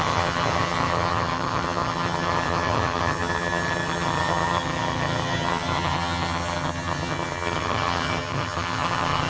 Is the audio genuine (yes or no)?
no